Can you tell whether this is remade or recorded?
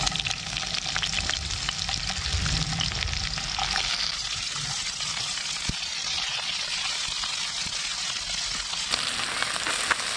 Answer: recorded